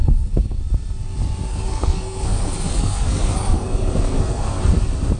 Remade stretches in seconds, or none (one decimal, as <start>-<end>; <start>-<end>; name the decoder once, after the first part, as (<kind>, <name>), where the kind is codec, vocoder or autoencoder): 0.0-0.6 (codec, SNAC); 1.5-4.6